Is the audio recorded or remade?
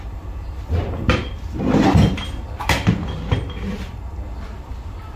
recorded